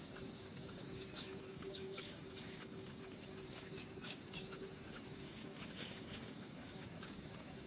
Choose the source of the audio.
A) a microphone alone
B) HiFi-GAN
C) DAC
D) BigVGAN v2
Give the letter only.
C